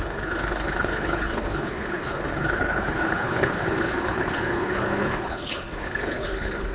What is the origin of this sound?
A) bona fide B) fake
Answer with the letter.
B